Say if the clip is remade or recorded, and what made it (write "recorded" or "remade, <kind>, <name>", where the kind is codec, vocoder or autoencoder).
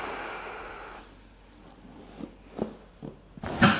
recorded